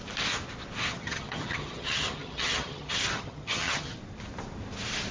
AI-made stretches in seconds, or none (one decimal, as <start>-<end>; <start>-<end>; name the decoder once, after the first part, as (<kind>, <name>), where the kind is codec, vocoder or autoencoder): 0.9-4.0 (vocoder, HiFi-GAN)

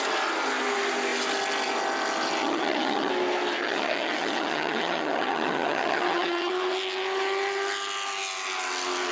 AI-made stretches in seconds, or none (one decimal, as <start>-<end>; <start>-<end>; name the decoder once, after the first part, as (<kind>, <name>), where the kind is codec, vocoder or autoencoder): 2.4-3.1 (vocoder, HiFi-GAN); 3.6-6.5

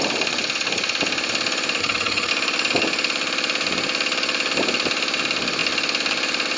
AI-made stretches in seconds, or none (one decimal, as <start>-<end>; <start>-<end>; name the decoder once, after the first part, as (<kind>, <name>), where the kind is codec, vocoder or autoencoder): 1.8-2.3 (vocoder, HiFi-GAN)

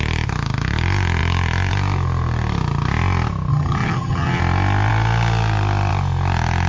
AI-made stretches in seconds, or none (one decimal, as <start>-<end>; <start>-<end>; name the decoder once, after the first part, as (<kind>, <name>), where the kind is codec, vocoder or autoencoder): 3.5-4.4 (vocoder, HiFi-GAN)